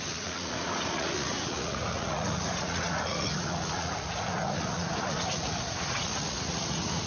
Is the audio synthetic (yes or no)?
yes